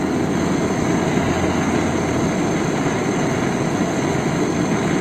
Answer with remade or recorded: recorded